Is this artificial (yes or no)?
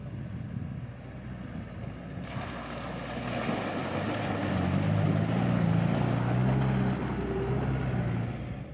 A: no